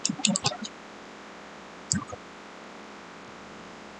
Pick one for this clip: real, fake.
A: real